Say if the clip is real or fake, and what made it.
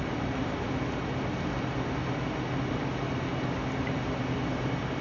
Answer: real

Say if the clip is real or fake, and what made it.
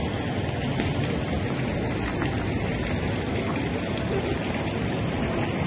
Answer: real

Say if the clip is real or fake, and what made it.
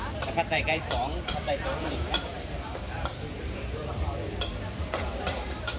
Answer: fake, vocoder, BigVGAN v2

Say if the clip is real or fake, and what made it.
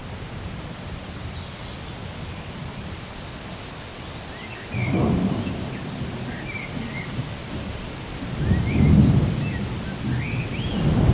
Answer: real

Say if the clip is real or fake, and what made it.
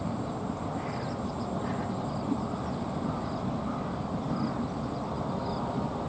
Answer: real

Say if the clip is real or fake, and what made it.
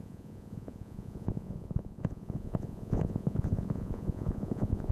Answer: fake, vocoder, Vocos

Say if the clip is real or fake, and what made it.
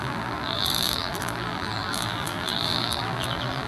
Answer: fake, vocoder, BigVGAN v2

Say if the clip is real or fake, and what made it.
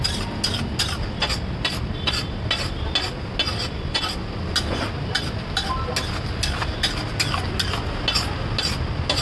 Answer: real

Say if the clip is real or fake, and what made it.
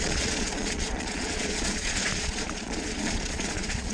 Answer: fake, vocoder, Vocos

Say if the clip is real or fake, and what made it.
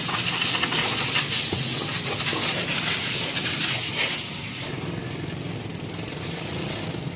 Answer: real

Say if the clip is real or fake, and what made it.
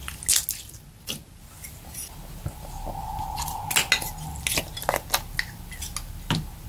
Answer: real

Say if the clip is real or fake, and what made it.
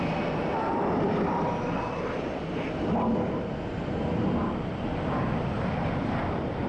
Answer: real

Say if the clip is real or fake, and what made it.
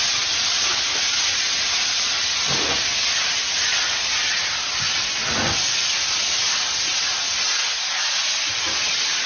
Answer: real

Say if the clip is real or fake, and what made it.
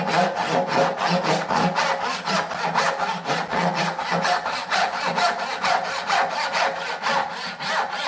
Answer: real